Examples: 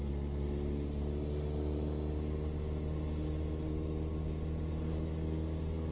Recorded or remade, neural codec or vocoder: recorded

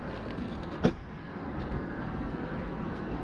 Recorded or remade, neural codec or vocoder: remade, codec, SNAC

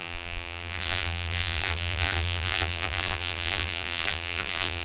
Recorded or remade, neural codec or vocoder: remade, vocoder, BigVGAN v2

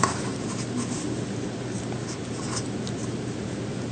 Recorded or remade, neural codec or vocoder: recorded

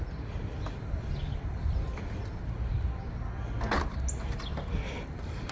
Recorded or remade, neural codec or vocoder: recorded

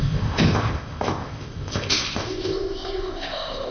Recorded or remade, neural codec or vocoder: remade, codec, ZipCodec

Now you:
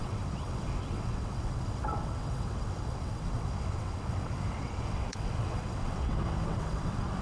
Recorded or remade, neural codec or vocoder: remade, vocoder, WaveNeXt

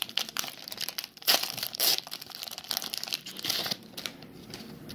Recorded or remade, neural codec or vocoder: remade, vocoder, BigVGAN v2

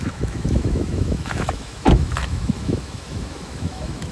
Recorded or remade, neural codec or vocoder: remade, autoencoder, DAC-VAE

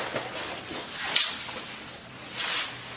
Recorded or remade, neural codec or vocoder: recorded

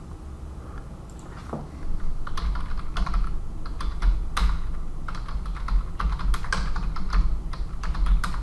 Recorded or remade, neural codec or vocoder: recorded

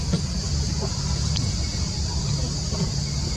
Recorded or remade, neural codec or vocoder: recorded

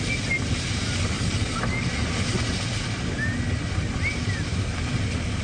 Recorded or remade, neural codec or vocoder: recorded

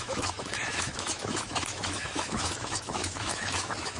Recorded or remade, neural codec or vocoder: remade, autoencoder, DAC-VAE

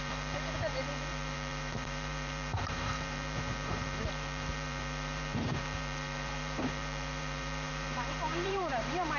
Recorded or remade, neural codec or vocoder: remade, vocoder, BigVGAN v2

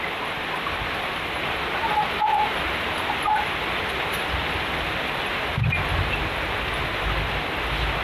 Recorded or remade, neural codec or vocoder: recorded